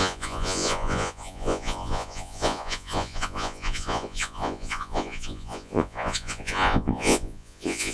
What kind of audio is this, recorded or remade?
remade